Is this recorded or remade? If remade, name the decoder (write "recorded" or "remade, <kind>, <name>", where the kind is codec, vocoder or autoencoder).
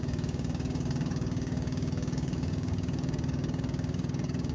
remade, codec, DAC